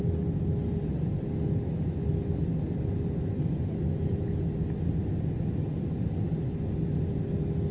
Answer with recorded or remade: recorded